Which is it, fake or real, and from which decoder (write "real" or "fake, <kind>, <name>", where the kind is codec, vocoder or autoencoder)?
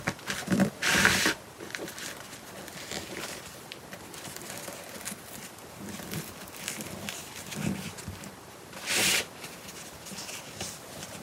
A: fake, vocoder, BigVGAN v2